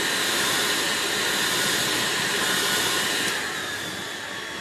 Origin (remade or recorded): recorded